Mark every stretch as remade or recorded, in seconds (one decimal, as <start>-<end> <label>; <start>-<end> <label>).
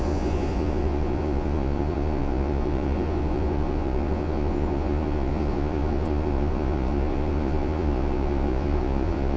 0.0-9.4 remade